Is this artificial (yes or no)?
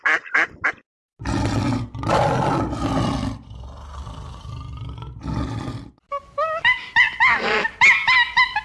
no